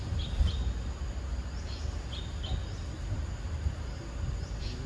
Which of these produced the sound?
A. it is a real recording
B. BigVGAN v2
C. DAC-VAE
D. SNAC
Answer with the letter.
B